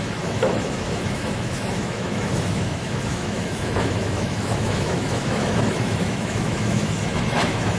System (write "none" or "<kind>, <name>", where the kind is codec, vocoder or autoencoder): autoencoder, DAC-VAE